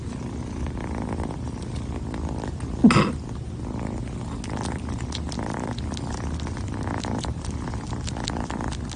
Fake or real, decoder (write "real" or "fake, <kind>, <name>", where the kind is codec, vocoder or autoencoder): real